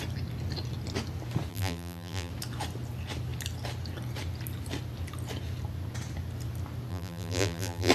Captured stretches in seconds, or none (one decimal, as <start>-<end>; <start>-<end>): 0.0-1.5; 2.3-6.9